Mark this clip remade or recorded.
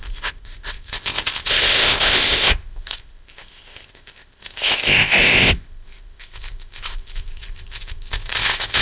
remade